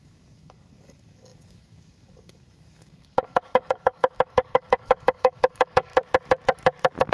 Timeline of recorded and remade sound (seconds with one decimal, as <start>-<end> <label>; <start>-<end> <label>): 0.0-5.9 remade; 5.9-7.1 recorded